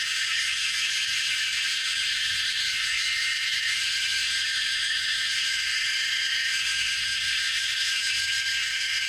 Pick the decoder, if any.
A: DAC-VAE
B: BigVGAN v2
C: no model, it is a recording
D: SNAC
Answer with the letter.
A